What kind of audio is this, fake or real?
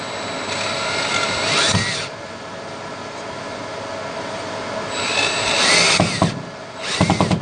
real